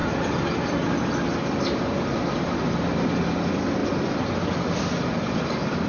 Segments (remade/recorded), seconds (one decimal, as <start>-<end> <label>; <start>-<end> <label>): 0.0-5.9 recorded

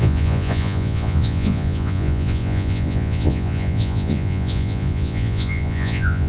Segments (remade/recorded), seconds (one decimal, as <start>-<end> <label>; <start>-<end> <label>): 0.0-6.3 remade

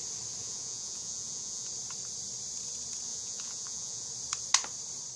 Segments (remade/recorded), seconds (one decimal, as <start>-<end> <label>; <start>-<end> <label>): 0.0-0.4 recorded; 0.4-1.7 remade; 1.7-3.1 recorded; 3.1-4.1 remade; 4.1-5.2 recorded

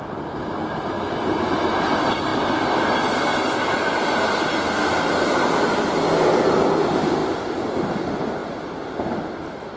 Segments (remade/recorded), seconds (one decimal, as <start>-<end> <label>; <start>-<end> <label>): 0.0-9.8 recorded